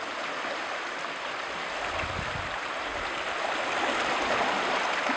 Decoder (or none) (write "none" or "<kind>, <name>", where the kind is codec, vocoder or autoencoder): none